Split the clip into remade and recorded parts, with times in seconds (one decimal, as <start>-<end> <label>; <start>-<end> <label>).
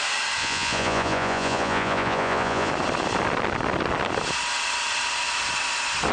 0.0-0.4 recorded; 0.4-2.7 remade; 2.7-6.1 recorded